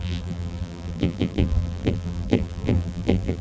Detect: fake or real fake